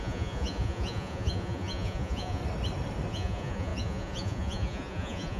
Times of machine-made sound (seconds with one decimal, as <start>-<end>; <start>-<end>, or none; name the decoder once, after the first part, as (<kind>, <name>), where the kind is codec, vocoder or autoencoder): 0.0-2.4 (vocoder, Vocos); 3.1-5.4